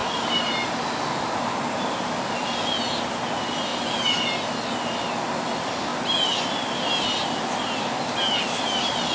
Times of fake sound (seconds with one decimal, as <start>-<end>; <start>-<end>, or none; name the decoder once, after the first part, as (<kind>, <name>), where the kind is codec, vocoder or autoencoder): 0.0-2.7 (vocoder, BigVGAN v2)